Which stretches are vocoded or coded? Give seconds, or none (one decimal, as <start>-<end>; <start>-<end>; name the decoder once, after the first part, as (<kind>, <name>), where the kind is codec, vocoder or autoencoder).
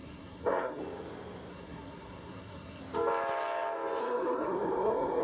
0.0-0.8 (codec, SNAC); 1.5-2.8; 4.0-5.2